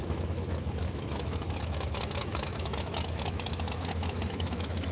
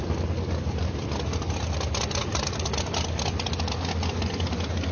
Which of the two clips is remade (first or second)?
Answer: first